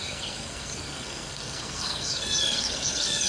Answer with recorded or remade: remade